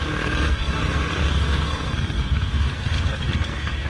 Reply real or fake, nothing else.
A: fake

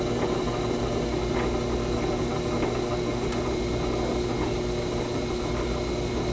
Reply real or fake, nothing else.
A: real